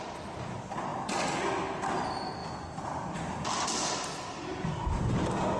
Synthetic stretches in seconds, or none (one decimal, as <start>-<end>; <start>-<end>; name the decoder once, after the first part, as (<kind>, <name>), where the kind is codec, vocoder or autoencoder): none